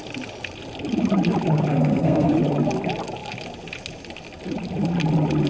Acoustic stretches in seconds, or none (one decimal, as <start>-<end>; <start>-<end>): 0.0-1.7; 2.3-5.5